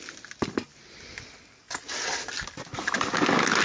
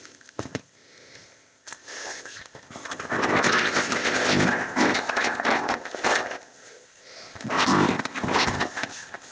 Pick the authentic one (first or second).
first